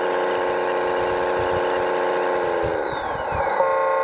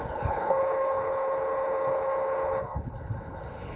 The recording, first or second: first